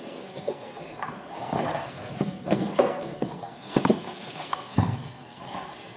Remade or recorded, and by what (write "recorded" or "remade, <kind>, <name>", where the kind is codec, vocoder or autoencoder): remade, codec, SNAC